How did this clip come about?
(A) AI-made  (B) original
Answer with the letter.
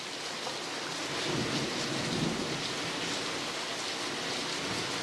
B